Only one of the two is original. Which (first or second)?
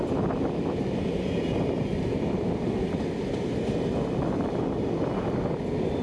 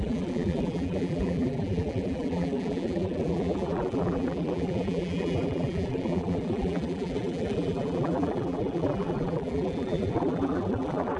first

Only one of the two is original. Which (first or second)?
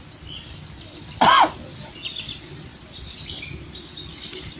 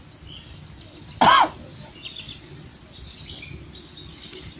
second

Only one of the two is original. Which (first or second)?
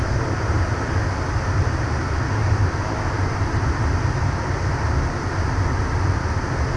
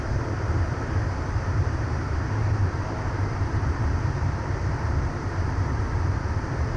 first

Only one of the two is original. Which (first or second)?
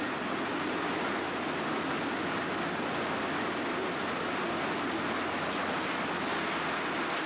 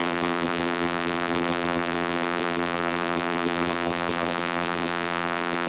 first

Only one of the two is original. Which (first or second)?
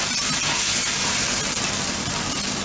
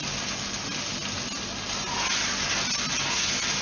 second